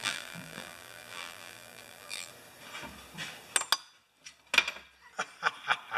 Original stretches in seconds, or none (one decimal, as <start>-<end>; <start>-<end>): 2.3-6.0